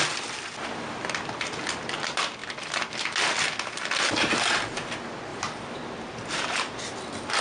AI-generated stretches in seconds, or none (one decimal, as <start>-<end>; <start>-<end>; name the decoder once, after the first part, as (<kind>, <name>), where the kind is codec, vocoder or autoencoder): 5.3-7.0 (vocoder, BigVGAN v2)